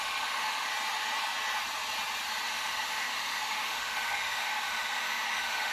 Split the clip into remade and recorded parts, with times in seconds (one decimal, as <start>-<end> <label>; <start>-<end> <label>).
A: 0.0-0.7 remade; 0.7-2.4 recorded; 2.4-5.7 remade